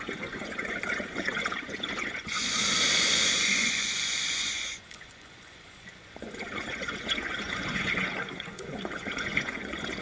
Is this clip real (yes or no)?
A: no